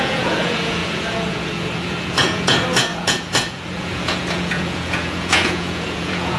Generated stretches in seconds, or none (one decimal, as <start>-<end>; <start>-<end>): 0.0-6.4